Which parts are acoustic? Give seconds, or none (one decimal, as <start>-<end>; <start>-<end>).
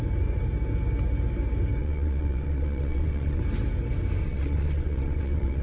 0.0-1.8; 3.4-4.2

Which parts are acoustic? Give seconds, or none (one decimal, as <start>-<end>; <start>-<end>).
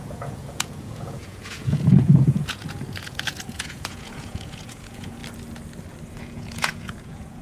5.2-6.2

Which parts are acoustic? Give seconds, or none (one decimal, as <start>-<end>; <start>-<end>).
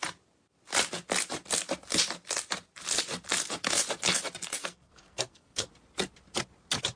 0.0-4.6; 5.7-7.0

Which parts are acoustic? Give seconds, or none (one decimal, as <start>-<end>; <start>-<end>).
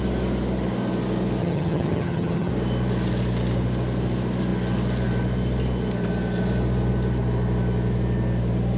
0.0-1.4; 2.5-8.8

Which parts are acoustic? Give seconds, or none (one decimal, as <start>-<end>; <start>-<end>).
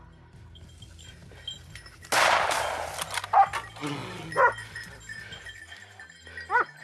0.0-6.8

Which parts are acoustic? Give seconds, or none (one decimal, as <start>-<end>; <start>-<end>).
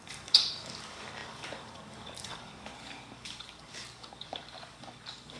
none